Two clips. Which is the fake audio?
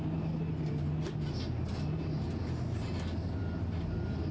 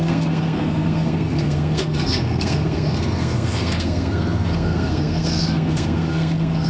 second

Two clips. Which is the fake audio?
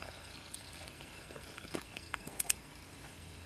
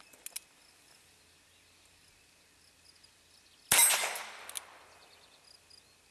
first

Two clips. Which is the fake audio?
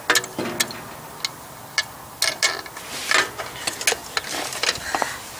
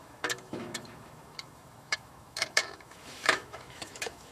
second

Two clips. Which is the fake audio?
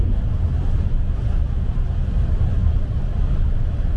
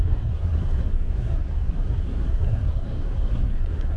second